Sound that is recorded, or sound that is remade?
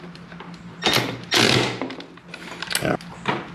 recorded